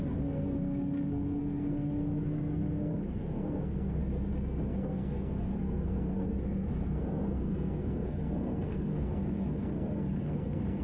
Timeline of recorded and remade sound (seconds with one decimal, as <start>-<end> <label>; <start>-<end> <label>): 0.0-4.0 remade; 4.0-4.6 recorded; 4.6-10.8 remade